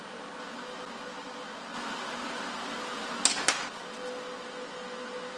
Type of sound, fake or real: real